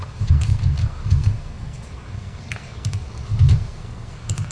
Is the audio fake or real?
fake